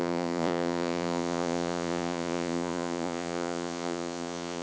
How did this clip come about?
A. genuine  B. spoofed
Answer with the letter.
B